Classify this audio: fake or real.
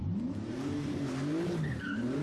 real